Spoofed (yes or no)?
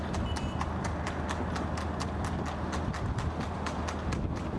no